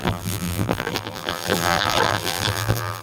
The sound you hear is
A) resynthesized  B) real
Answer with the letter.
A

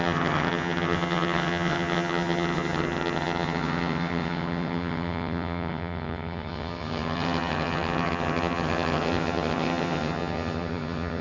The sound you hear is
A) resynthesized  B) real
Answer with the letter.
A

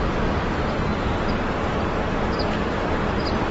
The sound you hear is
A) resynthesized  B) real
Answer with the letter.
A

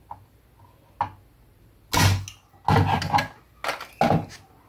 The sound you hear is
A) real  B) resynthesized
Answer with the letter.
A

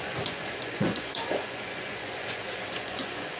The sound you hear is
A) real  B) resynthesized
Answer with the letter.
B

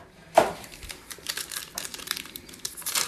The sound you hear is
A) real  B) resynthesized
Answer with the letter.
B